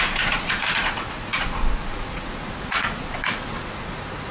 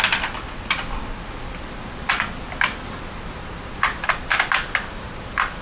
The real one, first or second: second